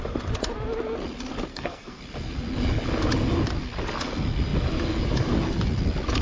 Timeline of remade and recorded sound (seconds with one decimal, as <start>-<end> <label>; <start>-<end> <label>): 0.0-1.5 recorded; 1.5-2.0 remade; 2.0-6.2 recorded